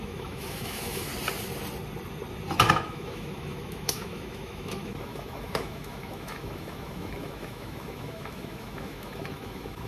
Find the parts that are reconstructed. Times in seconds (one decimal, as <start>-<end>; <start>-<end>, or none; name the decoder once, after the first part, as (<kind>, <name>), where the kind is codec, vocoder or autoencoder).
0.0-1.1 (autoencoder, DAC-VAE); 2.7-9.9